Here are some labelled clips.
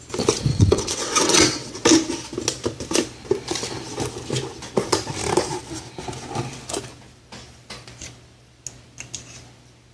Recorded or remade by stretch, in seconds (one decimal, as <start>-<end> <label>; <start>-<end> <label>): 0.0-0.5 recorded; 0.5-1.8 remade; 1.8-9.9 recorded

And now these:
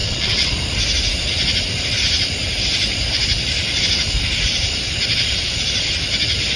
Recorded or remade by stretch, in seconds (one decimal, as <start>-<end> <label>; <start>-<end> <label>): 0.0-0.5 remade; 0.5-6.6 recorded

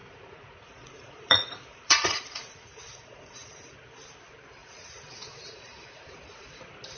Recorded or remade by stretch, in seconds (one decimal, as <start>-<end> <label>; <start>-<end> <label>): 0.0-3.7 remade; 3.7-4.6 recorded; 4.6-6.6 remade; 6.6-7.0 recorded

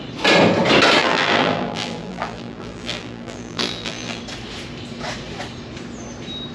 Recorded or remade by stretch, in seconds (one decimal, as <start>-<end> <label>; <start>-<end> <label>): 0.0-1.0 recorded; 1.0-4.2 remade; 4.2-6.5 recorded

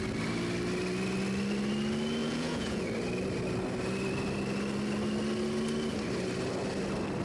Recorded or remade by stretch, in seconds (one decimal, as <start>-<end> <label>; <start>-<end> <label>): 0.0-2.2 recorded; 2.2-2.8 remade; 2.8-7.2 recorded

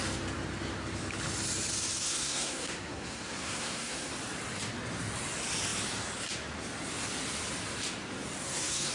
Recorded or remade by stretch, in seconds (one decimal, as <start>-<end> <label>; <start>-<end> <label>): 0.0-2.0 recorded; 2.0-4.1 remade; 4.1-8.4 recorded; 8.4-8.9 remade

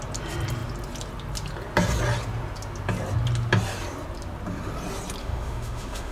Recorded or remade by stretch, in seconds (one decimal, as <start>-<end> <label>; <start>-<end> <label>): 0.0-5.2 recorded; 5.2-6.1 remade